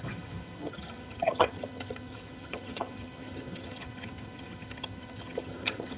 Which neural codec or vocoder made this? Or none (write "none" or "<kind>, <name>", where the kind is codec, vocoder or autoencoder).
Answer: vocoder, HiFi-GAN